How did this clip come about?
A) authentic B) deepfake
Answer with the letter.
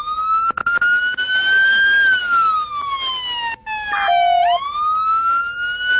A